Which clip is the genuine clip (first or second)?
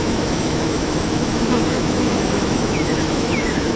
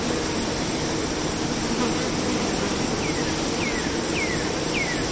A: second